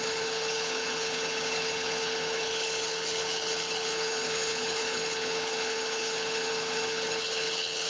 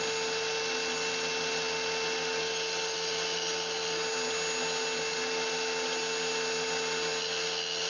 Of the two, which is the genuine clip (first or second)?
second